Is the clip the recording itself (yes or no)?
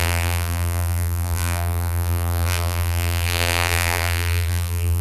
no